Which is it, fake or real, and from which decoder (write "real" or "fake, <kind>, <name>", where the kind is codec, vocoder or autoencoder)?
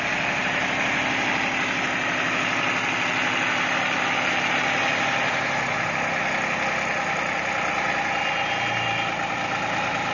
real